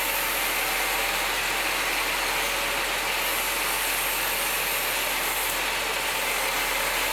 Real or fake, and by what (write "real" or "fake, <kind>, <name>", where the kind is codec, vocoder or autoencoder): real